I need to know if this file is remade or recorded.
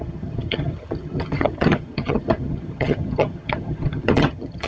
remade